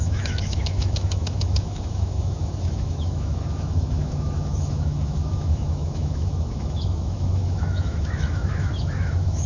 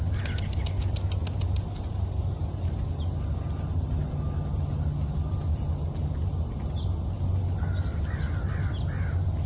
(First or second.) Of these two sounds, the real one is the second